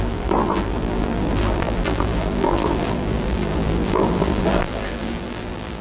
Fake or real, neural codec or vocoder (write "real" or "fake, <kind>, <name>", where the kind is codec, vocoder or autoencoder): fake, vocoder, BigVGAN v2